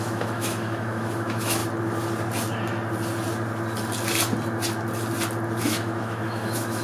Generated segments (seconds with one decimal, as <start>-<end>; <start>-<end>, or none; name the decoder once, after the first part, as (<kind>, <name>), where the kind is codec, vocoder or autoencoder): 0.0-1.6 (autoencoder, DAC-VAE); 5.6-6.8